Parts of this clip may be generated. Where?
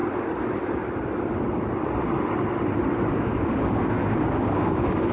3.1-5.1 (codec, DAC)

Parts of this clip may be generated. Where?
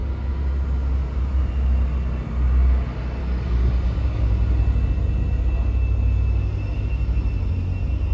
3.2-4.3 (codec, DAC)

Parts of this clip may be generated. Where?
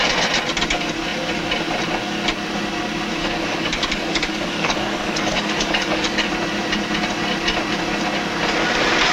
3.2-6.3 (codec, DAC)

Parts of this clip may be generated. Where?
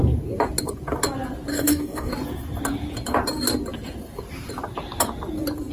1.5-2.1 (codec, DAC)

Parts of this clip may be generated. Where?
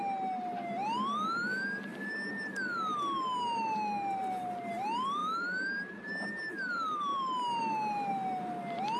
none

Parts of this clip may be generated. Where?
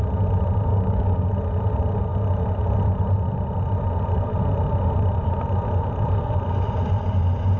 0.7-1.3 (codec, DAC)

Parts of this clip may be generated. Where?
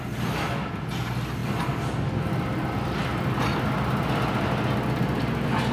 none